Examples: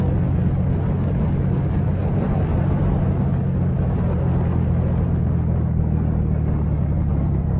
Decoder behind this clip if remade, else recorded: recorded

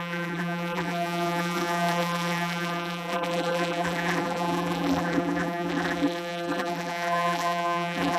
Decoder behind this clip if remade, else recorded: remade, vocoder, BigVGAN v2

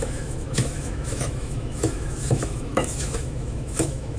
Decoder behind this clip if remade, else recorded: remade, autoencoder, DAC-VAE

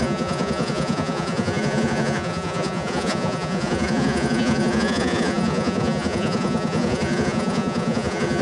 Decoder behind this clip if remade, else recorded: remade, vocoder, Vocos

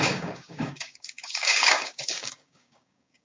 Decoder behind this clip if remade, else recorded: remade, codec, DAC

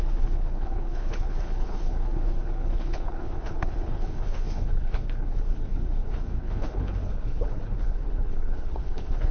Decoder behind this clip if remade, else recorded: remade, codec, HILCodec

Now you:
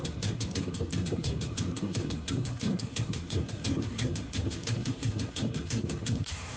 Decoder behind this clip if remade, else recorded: remade, codec, SNAC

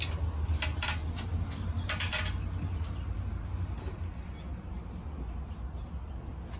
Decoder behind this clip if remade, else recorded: recorded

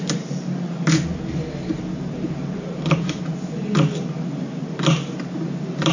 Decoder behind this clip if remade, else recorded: recorded